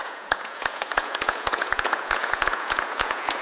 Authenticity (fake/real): fake